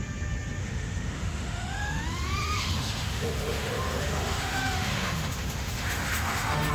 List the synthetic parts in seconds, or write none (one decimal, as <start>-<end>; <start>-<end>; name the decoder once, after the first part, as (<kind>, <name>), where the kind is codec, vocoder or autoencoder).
0.6-2.0 (autoencoder, DAC-VAE); 2.4-6.7